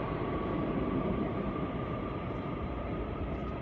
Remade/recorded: remade